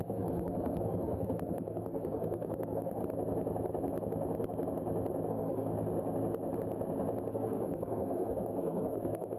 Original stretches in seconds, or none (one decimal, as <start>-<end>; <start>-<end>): 3.0-5.3; 5.7-7.3